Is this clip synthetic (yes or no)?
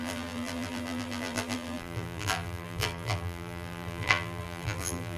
yes